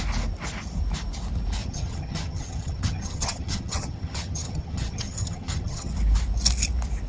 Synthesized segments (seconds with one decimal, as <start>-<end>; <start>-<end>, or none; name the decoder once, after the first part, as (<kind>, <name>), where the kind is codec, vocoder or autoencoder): 1.6-5.9 (vocoder, HiFi-GAN)